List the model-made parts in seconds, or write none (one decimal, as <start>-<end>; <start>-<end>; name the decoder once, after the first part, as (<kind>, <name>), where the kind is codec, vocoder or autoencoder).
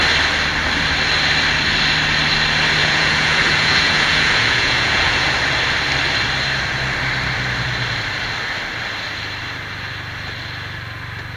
2.8-5.3 (vocoder, Vocos)